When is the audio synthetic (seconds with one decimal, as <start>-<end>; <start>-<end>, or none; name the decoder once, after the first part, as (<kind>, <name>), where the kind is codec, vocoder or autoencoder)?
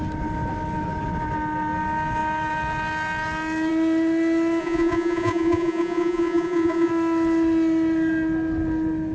4.6-6.9 (vocoder, Vocos)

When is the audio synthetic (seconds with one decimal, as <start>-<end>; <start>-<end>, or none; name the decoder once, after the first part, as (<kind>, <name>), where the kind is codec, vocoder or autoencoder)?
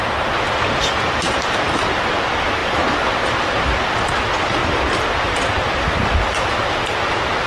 none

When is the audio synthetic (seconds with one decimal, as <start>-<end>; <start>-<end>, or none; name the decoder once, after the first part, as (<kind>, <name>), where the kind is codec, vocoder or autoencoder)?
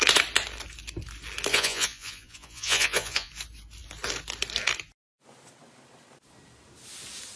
1.5-3.3 (vocoder, Vocos)